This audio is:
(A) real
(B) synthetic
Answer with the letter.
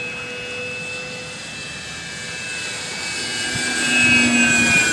A